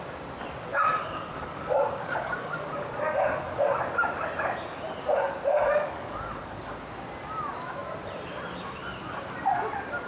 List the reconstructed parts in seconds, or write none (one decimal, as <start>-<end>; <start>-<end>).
0.7-3.7; 5.5-6.8